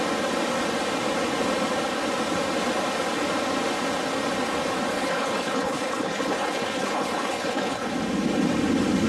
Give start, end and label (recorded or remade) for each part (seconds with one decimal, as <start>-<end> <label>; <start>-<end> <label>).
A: 0.0-4.9 recorded; 4.9-7.9 remade; 7.9-9.1 recorded